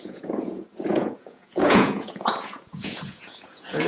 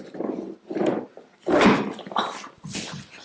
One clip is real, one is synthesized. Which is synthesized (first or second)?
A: first